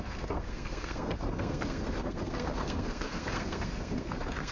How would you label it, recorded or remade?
remade